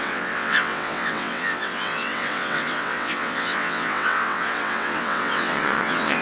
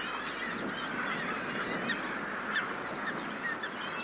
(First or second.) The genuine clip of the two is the second